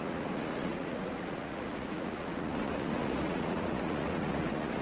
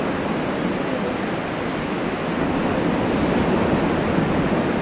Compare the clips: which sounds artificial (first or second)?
first